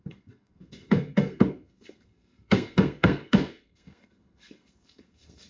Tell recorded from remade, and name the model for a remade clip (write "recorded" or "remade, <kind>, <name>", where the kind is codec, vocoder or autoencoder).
remade, codec, SNAC